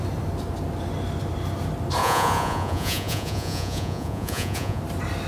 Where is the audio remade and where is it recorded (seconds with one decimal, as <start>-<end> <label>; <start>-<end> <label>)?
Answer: 0.0-2.0 recorded; 2.0-4.8 remade; 4.8-5.3 recorded